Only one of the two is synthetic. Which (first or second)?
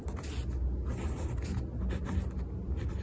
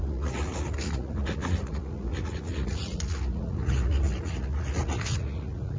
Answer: second